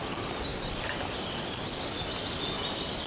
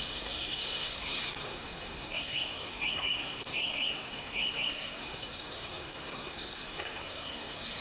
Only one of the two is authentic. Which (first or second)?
first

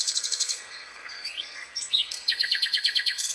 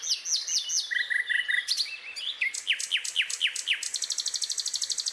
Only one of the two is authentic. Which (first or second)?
second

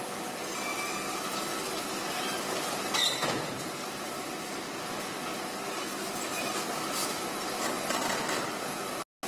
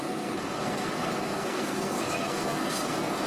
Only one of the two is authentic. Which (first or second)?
first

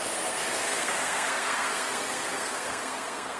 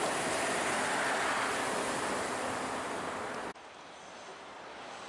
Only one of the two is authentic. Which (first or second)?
second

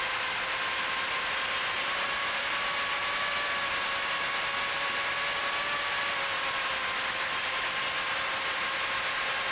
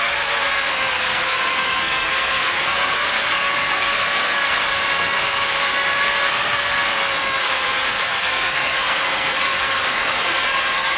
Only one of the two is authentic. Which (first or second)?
first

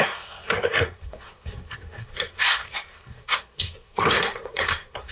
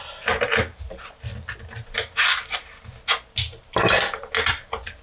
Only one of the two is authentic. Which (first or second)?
second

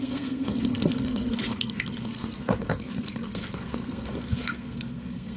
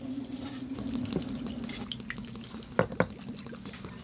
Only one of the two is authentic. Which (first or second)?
second